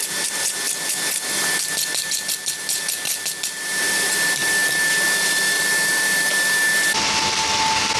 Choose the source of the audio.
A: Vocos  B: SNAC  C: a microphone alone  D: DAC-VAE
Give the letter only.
C